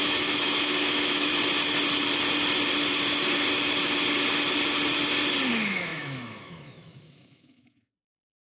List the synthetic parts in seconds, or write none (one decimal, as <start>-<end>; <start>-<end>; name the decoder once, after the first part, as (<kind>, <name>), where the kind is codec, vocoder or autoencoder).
0.0-1.3 (autoencoder, DAC-VAE); 5.5-8.4